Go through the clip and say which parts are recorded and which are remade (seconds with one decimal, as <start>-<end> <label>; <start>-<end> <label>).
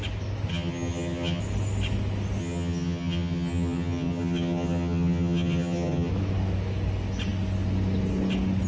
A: 0.0-0.5 recorded; 0.5-1.4 remade; 1.4-2.4 recorded; 2.4-6.1 remade; 6.1-8.7 recorded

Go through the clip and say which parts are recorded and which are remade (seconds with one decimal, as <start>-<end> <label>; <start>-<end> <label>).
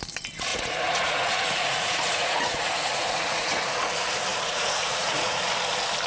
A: 0.0-0.5 recorded; 0.5-3.7 remade; 3.7-4.3 recorded; 4.3-5.4 remade; 5.4-6.1 recorded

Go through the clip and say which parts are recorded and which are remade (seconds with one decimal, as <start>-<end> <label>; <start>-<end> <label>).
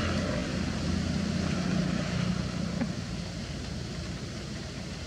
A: 0.0-5.1 recorded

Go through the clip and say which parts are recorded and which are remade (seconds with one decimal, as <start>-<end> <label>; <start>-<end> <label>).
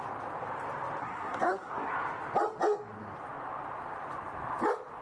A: 0.0-1.0 recorded; 1.0-1.9 remade; 1.9-5.0 recorded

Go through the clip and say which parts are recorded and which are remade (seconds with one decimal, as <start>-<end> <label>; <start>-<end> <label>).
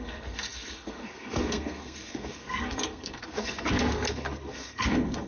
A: 0.0-5.3 remade